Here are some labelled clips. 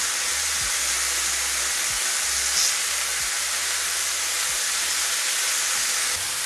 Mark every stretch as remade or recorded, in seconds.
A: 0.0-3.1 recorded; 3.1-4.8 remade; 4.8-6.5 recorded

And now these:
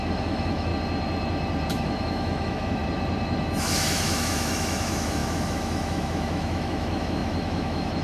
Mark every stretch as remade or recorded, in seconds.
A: 0.0-0.7 remade; 0.7-1.7 recorded; 1.7-2.8 remade; 2.8-3.6 recorded; 3.6-8.0 remade

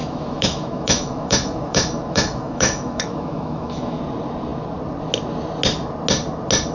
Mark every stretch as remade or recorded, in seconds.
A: 0.0-4.0 remade; 4.0-6.7 recorded

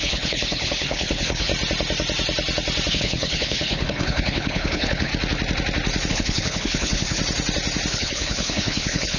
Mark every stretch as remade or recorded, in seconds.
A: 0.0-1.5 remade; 1.5-2.9 recorded; 2.9-5.1 remade; 5.1-6.1 recorded; 6.1-7.2 remade; 7.2-7.9 recorded; 7.9-9.2 remade